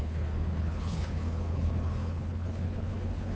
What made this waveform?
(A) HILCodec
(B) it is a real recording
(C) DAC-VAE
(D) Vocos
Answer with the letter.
A